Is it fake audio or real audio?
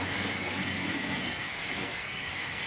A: fake